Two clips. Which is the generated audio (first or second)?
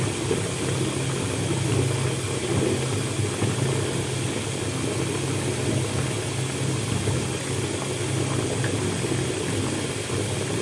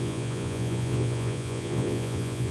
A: second